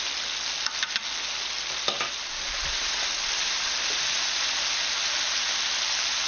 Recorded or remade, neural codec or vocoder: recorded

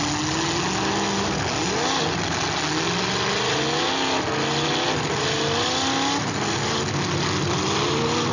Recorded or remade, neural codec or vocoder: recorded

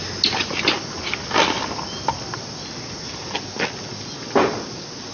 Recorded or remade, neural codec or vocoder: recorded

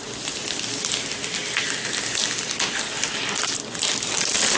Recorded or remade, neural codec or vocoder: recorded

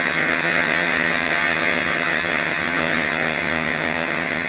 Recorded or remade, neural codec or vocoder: remade, vocoder, HiFi-GAN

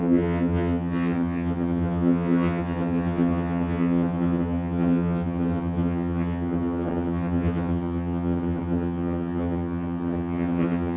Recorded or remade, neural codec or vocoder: remade, vocoder, HiFi-GAN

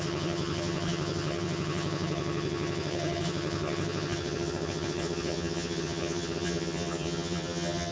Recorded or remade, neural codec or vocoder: remade, vocoder, HiFi-GAN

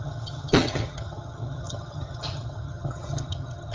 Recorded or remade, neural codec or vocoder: remade, vocoder, HiFi-GAN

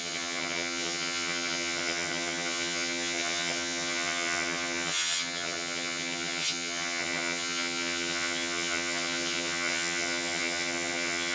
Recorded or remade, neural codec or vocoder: remade, vocoder, HiFi-GAN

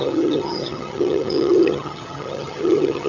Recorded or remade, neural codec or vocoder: remade, vocoder, HiFi-GAN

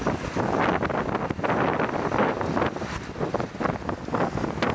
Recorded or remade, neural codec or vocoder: recorded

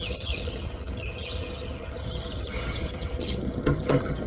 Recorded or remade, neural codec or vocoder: remade, vocoder, HiFi-GAN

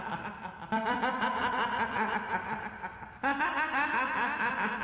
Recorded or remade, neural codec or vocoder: recorded